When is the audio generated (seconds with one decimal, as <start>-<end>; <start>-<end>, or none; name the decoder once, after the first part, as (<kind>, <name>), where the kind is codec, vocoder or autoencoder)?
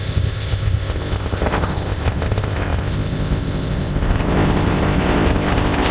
0.0-5.9 (codec, ZipCodec)